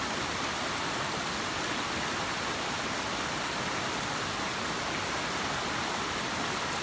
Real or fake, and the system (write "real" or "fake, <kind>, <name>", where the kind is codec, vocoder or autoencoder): real